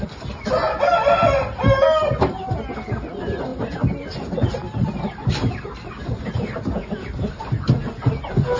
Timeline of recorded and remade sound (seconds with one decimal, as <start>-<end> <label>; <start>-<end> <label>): 0.0-8.6 recorded